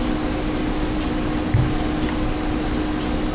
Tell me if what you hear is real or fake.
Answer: real